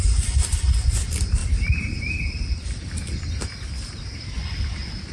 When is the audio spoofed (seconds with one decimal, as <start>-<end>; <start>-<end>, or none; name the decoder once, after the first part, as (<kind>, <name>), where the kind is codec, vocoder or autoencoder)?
none